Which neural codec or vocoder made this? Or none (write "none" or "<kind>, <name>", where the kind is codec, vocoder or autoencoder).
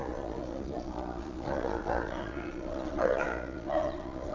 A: vocoder, Vocos